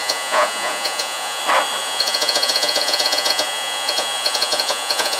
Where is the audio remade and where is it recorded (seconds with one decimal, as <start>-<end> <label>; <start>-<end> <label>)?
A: 0.0-1.4 remade; 1.4-1.8 recorded; 1.8-5.2 remade

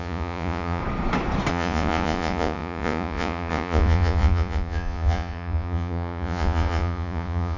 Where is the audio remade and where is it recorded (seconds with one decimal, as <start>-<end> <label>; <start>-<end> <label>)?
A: 0.0-0.8 remade; 0.8-1.5 recorded; 1.5-7.6 remade

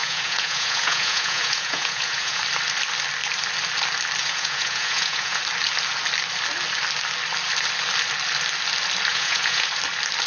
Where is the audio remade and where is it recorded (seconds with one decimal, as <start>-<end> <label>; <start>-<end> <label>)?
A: 0.0-2.4 remade; 2.4-4.2 recorded; 4.2-5.4 remade; 5.4-9.1 recorded; 9.1-9.7 remade; 9.7-10.3 recorded

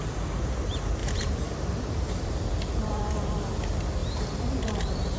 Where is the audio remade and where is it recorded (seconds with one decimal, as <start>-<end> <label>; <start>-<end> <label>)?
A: 0.0-1.0 recorded; 1.0-3.1 remade; 3.1-4.0 recorded; 4.0-5.2 remade

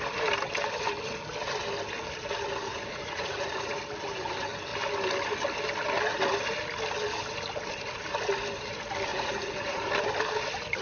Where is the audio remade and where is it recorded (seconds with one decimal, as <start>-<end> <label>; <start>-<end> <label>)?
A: 0.0-2.7 recorded; 2.7-3.8 remade; 3.8-9.1 recorded; 9.1-9.9 remade; 9.9-10.8 recorded

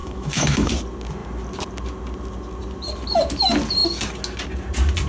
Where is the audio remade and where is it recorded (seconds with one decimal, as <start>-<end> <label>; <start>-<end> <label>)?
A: 0.0-0.7 remade; 0.7-5.1 recorded

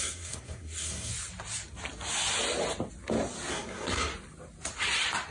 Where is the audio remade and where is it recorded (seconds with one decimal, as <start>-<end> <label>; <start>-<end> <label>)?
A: 0.0-1.1 remade; 1.1-3.5 recorded; 3.5-4.1 remade; 4.1-5.3 recorded